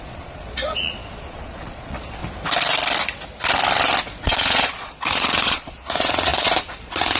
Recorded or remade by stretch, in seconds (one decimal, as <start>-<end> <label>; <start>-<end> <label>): 0.0-2.2 remade; 2.2-4.0 recorded; 4.0-7.2 remade